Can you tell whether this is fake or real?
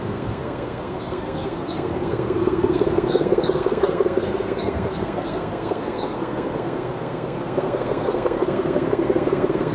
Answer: fake